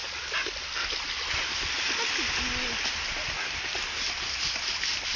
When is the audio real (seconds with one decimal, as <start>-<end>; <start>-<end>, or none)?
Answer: 0.0-5.2